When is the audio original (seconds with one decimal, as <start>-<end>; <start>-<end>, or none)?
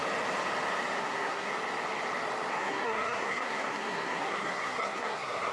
0.0-1.0; 1.5-2.5